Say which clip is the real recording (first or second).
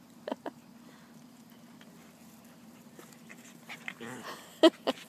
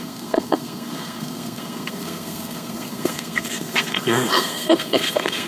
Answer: first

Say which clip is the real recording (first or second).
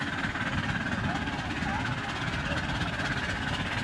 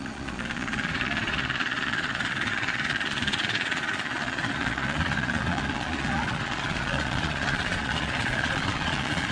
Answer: first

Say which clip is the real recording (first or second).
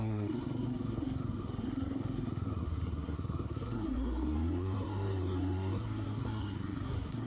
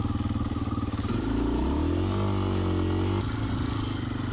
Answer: second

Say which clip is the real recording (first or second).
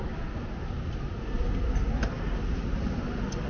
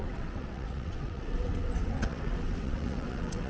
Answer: first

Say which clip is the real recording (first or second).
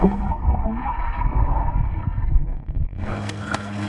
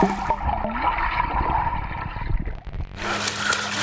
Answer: second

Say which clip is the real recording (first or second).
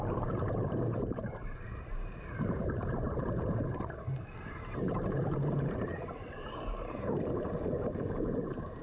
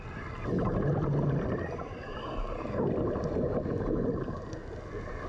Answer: second